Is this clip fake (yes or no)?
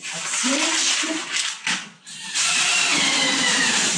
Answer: yes